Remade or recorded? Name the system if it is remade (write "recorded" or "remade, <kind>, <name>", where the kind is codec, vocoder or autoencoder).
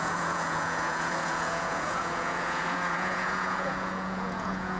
remade, vocoder, Vocos